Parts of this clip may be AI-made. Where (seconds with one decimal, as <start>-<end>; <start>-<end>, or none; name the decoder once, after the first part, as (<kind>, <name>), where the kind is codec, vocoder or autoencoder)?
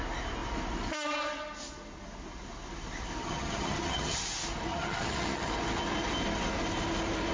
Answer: 3.2-4.2 (vocoder, HiFi-GAN); 4.7-5.5